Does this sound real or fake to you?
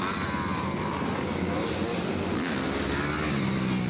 real